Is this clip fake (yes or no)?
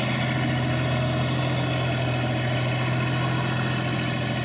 no